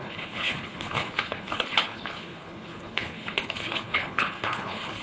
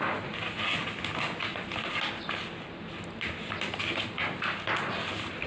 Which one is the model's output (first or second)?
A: first